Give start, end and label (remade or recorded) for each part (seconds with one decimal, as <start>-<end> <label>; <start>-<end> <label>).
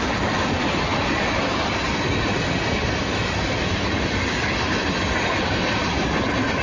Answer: 0.0-6.6 recorded